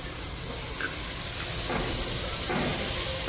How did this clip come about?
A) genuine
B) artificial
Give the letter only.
A